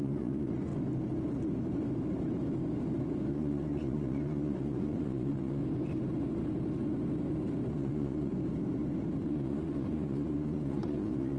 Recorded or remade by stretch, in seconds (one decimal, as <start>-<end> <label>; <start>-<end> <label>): 0.0-0.7 remade; 0.7-3.3 recorded; 3.3-5.6 remade; 5.6-7.7 recorded; 7.7-8.3 remade; 8.3-9.2 recorded; 9.2-11.4 remade